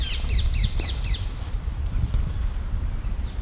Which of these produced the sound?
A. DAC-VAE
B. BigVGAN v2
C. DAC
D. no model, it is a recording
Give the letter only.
B